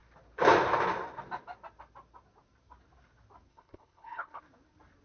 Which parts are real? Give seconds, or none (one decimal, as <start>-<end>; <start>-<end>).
0.0-3.5; 4.4-5.0